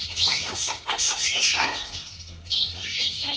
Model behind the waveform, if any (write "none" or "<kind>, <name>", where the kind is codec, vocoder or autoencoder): codec, SNAC